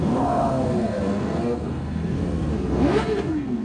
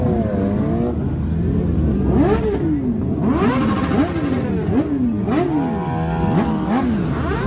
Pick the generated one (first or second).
first